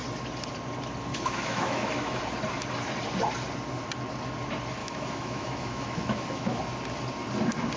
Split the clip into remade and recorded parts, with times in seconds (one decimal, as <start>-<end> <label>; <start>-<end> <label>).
0.0-1.1 recorded; 1.1-2.2 remade; 2.2-4.8 recorded; 4.8-6.6 remade; 6.6-7.8 recorded